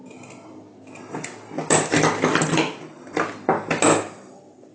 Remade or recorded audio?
recorded